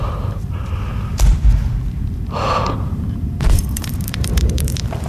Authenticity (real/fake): fake